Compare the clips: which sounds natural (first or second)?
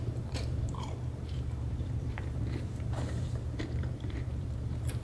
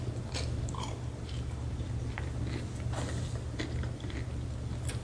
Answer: second